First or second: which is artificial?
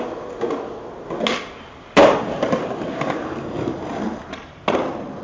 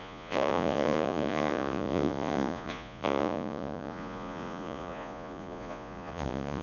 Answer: second